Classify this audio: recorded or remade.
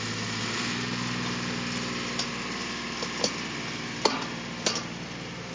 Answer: recorded